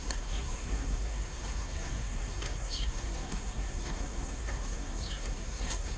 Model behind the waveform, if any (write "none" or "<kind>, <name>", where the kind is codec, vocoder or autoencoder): codec, SNAC